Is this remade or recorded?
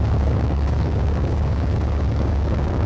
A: remade